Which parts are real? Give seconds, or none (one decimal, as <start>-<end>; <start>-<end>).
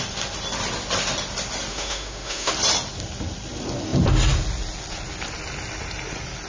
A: 0.0-1.7; 2.5-6.5